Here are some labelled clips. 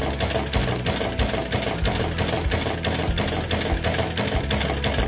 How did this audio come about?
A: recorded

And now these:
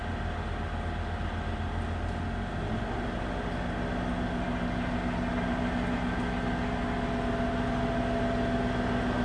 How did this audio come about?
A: recorded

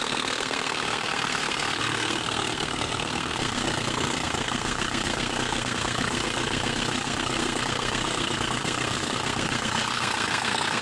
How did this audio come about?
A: remade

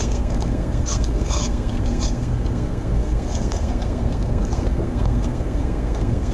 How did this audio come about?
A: remade